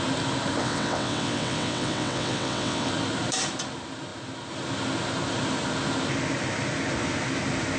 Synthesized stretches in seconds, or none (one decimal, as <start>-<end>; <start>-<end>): 0.6-2.9